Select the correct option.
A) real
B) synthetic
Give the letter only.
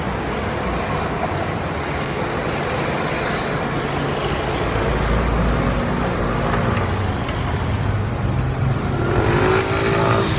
A